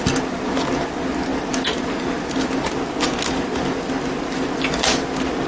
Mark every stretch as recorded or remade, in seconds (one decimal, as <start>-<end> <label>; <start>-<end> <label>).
0.0-5.5 recorded